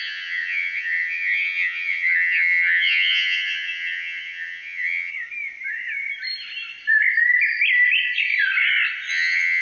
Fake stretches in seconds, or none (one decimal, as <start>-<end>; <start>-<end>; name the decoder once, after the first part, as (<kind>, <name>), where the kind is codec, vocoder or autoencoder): 0.0-5.1 (vocoder, HiFi-GAN); 9.1-9.6